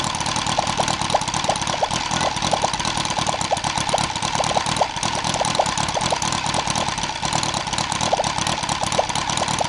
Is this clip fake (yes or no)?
no